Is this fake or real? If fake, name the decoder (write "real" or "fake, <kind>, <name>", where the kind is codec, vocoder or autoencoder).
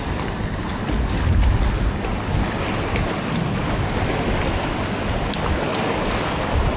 real